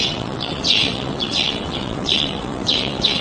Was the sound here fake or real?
fake